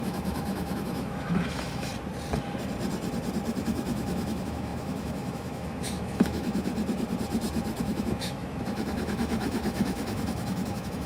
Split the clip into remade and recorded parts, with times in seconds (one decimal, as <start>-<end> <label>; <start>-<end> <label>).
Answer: 0.0-1.9 remade; 1.9-3.6 recorded; 3.6-6.7 remade; 6.7-7.8 recorded; 7.8-11.1 remade

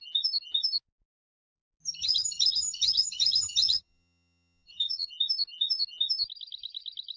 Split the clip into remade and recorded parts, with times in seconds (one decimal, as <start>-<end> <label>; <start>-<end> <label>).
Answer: 0.0-2.0 recorded; 2.0-5.1 remade; 5.1-7.2 recorded

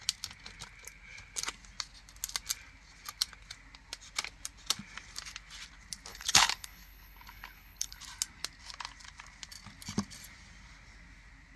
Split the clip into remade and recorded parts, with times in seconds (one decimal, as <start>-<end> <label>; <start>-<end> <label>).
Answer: 0.0-6.1 recorded; 6.1-8.0 remade; 8.0-11.6 recorded

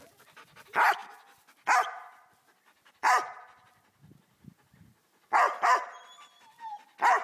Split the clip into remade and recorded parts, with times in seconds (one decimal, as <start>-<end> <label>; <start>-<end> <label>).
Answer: 0.0-7.2 recorded

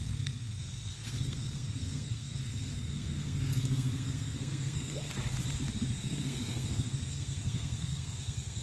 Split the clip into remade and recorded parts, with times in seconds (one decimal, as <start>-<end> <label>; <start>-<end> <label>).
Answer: 0.0-5.1 remade; 5.1-5.9 recorded; 5.9-8.6 remade

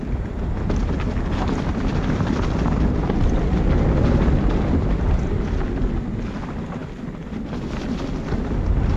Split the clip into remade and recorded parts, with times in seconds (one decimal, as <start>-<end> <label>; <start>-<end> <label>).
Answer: 0.0-9.0 recorded

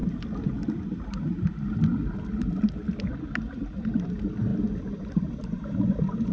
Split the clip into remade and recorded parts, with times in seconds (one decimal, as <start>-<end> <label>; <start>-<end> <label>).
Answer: 0.0-1.7 recorded; 1.7-2.8 remade; 2.8-3.3 recorded; 3.3-6.3 remade